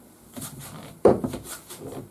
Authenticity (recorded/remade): remade